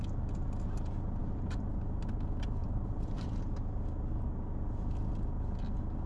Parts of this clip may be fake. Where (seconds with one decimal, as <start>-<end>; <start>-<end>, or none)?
1.2-1.7; 2.6-3.4